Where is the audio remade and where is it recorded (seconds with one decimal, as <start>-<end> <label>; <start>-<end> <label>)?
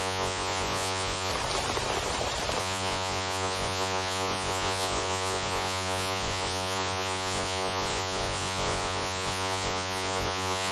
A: 0.0-1.3 remade; 1.3-2.6 recorded; 2.6-10.7 remade